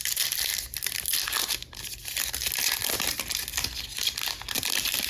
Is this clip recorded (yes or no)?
yes